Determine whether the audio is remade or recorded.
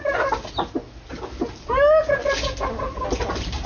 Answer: recorded